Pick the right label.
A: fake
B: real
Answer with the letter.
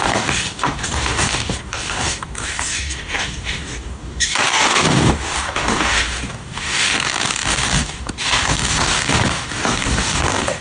A